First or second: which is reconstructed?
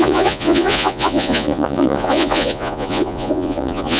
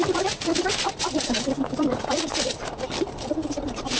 first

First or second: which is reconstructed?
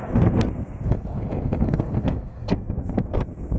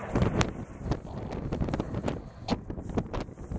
first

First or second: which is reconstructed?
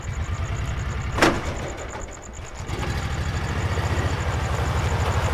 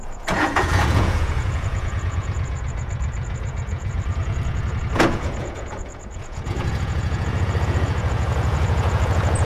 second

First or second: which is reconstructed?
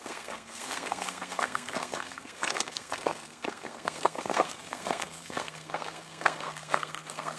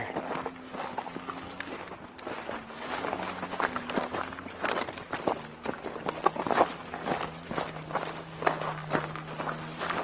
first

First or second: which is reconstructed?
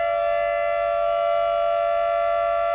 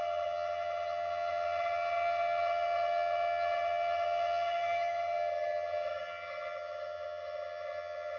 second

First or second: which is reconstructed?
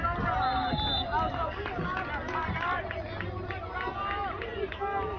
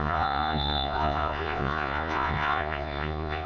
second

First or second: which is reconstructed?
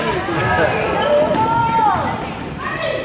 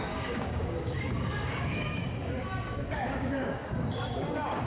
second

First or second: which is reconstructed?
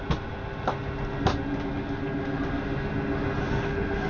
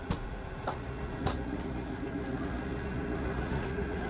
second